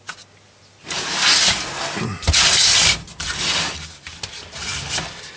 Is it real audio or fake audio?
real